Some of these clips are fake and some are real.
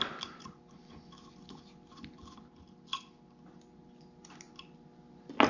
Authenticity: real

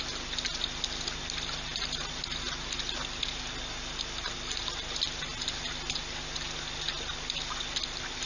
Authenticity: real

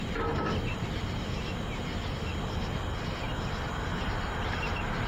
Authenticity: real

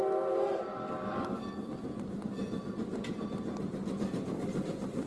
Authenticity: real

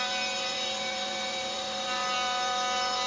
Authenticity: fake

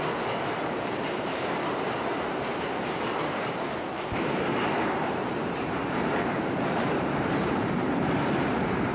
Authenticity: fake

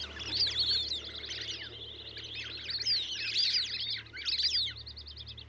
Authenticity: real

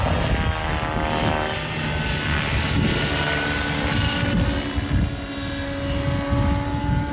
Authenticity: real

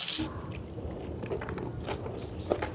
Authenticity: fake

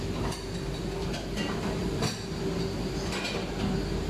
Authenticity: real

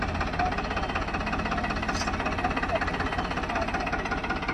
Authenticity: real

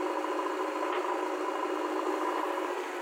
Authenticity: real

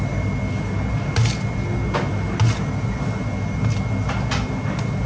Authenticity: real